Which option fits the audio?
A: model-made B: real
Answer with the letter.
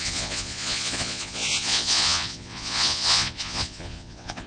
A